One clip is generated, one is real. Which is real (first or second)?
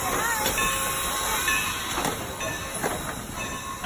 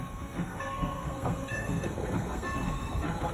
first